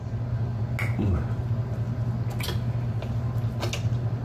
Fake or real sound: real